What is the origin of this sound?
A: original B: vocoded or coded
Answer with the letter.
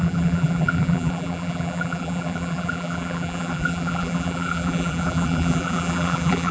B